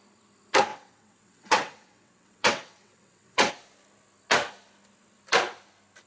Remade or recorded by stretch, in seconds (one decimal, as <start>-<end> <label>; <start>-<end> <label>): 0.0-0.7 recorded; 0.7-3.5 remade; 3.5-6.1 recorded